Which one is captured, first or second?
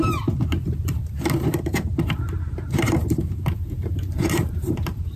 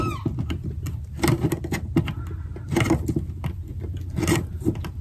second